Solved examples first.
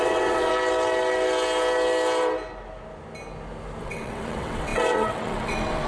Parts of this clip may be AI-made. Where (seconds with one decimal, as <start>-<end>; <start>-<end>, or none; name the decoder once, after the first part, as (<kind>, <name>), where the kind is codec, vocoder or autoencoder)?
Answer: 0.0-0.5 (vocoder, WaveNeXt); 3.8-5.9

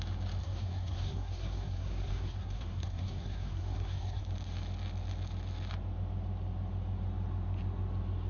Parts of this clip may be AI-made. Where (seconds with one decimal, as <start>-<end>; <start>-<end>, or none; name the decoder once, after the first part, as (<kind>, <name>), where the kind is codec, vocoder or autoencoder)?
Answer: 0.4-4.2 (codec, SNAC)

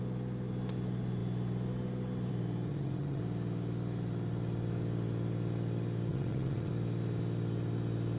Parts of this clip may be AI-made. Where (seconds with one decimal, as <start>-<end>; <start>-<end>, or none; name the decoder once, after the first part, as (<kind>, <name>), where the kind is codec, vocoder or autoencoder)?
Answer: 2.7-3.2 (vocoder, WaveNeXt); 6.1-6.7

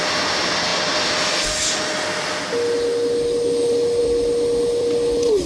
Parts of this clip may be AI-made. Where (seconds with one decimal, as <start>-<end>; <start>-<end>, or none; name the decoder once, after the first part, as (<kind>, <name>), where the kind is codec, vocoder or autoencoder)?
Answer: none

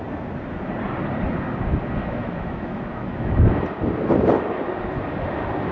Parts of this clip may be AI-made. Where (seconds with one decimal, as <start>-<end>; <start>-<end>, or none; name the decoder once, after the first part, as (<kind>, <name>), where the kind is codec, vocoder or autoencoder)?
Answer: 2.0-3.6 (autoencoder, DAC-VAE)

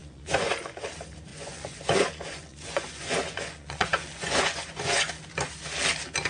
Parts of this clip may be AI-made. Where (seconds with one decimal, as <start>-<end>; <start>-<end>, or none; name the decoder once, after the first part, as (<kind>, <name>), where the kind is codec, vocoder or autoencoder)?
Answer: 0.0-0.5 (vocoder, Vocos); 1.3-5.1